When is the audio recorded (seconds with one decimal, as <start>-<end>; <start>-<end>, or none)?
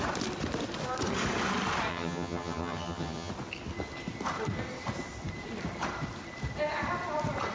0.0-1.9; 3.3-7.5